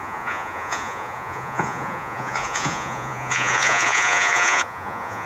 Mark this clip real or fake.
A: fake